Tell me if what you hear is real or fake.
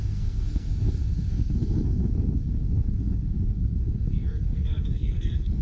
fake